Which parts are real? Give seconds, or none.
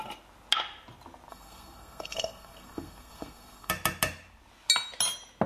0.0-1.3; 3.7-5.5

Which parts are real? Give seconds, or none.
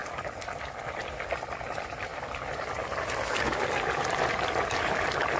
0.0-1.0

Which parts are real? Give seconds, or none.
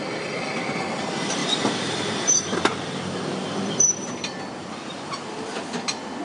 0.0-1.4; 5.1-6.2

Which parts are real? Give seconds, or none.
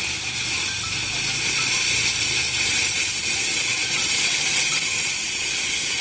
0.0-3.5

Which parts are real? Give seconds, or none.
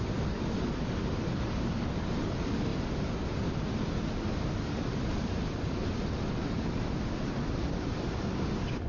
0.0-8.9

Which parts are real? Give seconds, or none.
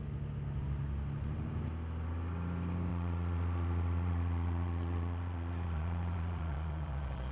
0.0-2.9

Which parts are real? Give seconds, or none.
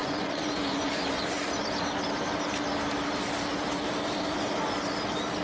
1.4-5.4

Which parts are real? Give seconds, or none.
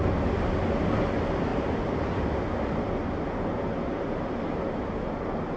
0.0-1.5; 2.3-3.9; 4.8-5.6